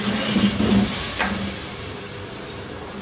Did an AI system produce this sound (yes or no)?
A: no